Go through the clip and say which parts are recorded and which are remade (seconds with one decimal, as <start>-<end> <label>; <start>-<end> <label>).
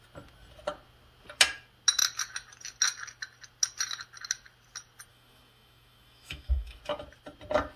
0.0-5.1 recorded; 5.1-6.8 remade; 6.8-7.8 recorded